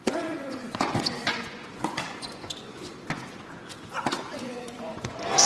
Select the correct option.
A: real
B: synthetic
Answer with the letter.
B